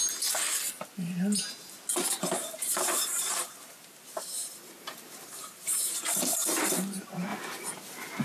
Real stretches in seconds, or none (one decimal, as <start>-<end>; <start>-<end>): 0.0-2.0; 6.0-8.2